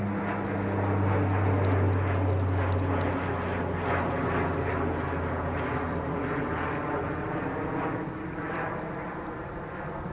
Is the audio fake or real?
real